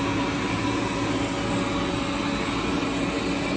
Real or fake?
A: real